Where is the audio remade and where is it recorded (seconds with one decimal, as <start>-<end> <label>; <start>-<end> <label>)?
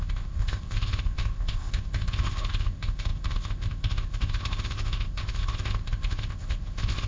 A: 0.0-7.1 remade